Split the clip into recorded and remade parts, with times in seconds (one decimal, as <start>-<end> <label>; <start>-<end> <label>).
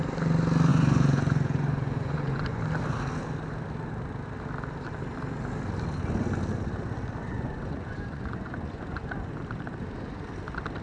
0.0-0.7 recorded; 0.7-2.6 remade; 2.6-7.2 recorded; 7.2-9.1 remade; 9.1-10.8 recorded